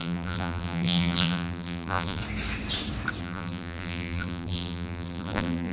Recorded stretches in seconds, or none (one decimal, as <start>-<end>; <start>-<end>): 2.2-3.2